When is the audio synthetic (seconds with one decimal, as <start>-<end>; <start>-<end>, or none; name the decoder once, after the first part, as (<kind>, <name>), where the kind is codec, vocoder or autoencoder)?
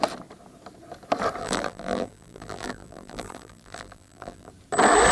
1.4-4.5 (vocoder, BigVGAN v2)